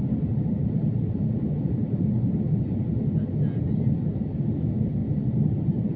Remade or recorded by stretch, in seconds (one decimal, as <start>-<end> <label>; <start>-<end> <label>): 0.0-6.0 recorded